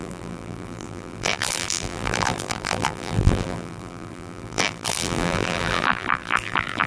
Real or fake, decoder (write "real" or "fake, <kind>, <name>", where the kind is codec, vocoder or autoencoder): fake, vocoder, BigVGAN v2